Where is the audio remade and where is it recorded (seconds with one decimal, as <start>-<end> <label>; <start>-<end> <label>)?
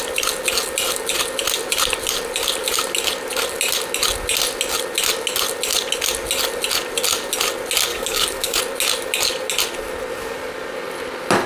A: 0.0-7.9 recorded; 7.9-8.6 remade; 8.6-11.5 recorded